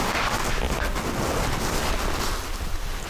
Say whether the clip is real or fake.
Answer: real